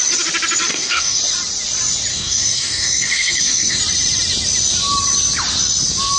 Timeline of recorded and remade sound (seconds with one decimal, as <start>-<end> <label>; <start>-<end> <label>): 0.0-0.7 recorded; 0.7-1.2 remade; 1.2-2.1 recorded; 2.1-3.8 remade; 3.8-6.2 recorded